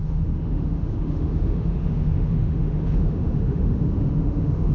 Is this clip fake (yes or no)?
yes